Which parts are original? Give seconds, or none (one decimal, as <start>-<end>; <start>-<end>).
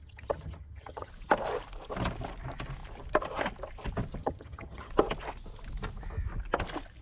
1.1-4.2; 4.9-7.0